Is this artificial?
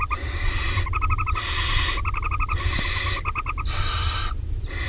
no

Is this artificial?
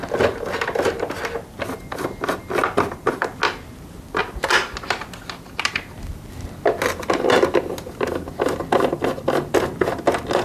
no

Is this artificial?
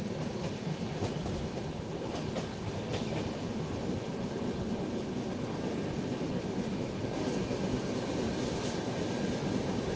no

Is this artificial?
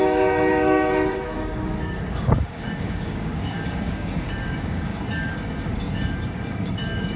yes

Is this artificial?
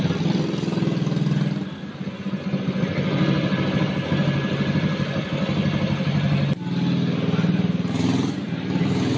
no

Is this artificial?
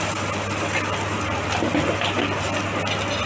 no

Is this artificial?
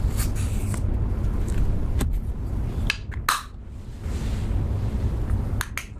no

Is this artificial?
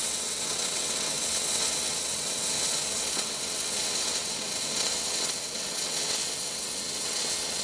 yes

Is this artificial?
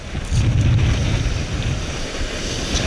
no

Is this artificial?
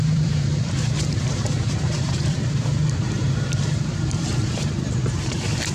yes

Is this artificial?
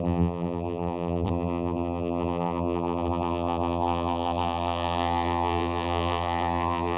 yes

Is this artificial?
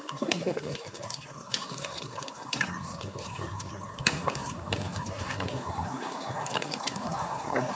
yes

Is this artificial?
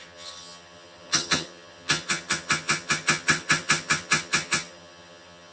yes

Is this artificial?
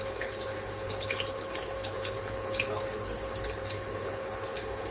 yes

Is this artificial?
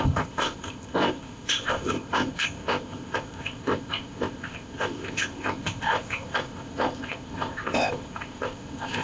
yes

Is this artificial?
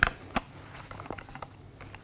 no